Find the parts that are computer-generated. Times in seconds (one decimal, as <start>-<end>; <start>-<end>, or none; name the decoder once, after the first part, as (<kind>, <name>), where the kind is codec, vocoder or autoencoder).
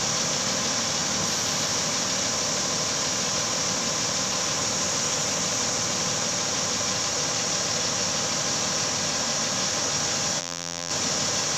10.4-10.9 (vocoder, BigVGAN v2)